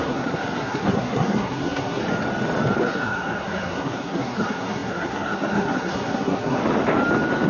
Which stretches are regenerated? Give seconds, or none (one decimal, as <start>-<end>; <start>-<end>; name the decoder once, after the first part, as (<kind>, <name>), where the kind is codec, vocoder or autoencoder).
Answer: 0.0-2.0 (codec, SNAC); 2.8-6.6